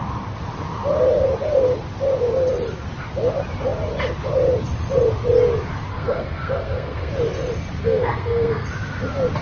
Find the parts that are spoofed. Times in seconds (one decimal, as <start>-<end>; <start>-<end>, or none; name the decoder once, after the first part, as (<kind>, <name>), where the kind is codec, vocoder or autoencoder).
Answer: 5.9-7.1 (codec, SNAC); 7.8-8.7